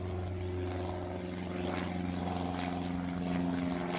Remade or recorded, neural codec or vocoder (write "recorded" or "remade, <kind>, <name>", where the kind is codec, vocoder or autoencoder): recorded